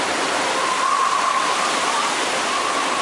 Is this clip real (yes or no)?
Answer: yes